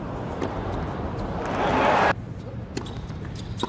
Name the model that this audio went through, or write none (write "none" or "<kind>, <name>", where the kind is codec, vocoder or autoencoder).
none